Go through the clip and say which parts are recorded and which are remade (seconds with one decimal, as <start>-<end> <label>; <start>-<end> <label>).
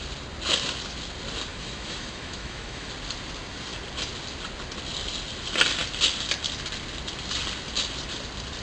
0.0-1.5 recorded; 1.5-2.9 remade; 2.9-8.6 recorded